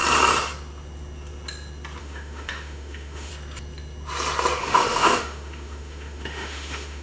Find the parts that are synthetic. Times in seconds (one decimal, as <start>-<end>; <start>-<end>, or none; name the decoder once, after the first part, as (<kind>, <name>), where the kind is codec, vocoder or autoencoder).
2.0-3.3 (autoencoder, DAC-VAE); 4.6-7.0